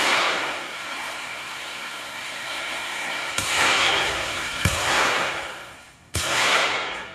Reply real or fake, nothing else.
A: fake